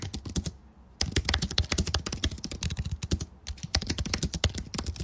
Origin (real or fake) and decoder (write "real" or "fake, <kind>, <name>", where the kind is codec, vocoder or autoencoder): real